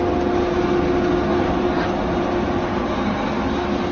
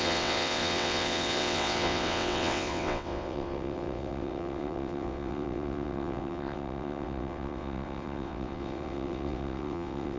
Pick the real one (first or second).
first